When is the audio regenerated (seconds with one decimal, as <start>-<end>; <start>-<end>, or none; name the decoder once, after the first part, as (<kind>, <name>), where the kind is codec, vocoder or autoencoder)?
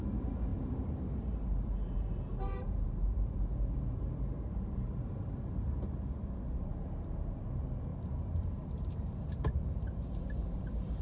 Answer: 0.5-5.5 (vocoder, BigVGAN v2); 7.9-10.6